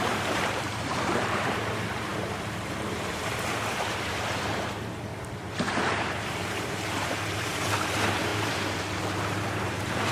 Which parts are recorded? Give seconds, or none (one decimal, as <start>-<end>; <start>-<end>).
5.1-5.9